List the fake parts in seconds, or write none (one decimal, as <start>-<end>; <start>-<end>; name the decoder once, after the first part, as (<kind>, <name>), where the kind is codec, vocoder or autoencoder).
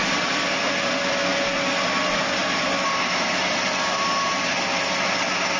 none